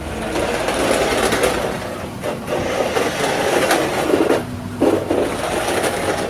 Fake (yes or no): no